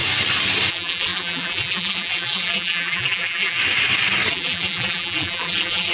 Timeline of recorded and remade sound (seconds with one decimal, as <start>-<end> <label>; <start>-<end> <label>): 0.0-0.7 recorded; 0.7-3.6 remade; 3.6-4.3 recorded; 4.3-5.9 remade